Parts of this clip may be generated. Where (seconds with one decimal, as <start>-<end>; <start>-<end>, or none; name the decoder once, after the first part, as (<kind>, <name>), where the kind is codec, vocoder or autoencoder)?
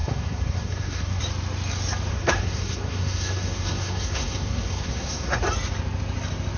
0.0-1.2 (codec, SNAC); 2.1-5.4